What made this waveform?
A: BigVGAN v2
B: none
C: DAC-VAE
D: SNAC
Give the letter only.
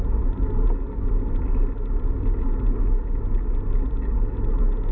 B